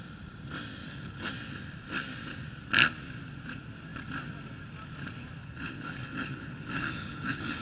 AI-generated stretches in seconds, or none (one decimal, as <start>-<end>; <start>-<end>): 0.8-1.3; 5.4-7.6